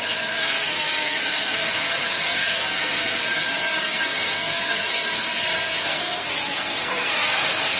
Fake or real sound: fake